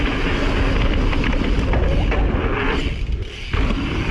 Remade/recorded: recorded